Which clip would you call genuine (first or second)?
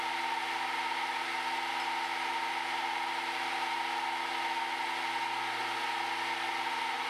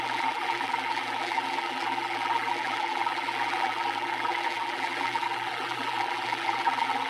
first